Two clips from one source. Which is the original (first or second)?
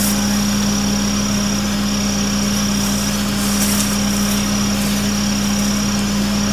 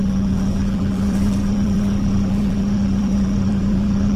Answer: first